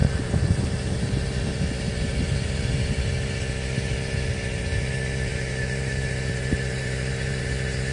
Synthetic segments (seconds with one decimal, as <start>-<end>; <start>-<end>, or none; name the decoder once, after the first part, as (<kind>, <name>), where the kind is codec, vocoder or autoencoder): 0.0-2.7 (vocoder, BigVGAN v2); 5.3-7.4